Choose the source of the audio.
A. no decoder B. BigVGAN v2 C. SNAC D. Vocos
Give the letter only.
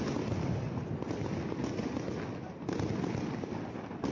A